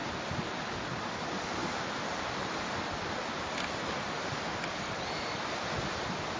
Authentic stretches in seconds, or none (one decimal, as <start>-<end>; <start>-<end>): 1.1-1.6; 5.1-6.4